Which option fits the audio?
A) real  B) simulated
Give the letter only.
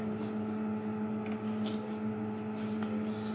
A